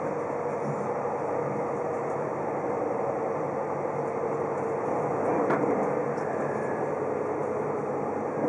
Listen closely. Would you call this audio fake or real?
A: real